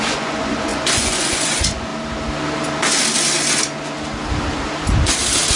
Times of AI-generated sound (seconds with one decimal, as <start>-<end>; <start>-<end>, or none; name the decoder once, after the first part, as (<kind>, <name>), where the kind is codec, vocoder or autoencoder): 0.0-1.9 (vocoder, Vocos)